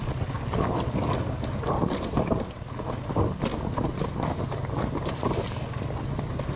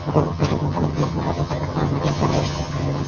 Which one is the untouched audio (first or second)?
first